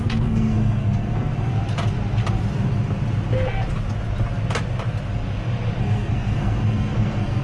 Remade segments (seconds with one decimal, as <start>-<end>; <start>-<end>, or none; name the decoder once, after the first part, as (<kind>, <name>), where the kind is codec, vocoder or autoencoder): 0.0-1.5 (codec, SNAC); 5.8-7.4